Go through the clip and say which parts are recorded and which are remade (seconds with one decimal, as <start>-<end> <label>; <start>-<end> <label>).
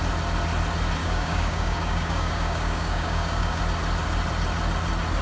0.0-1.0 recorded; 1.0-3.6 remade; 3.6-5.2 recorded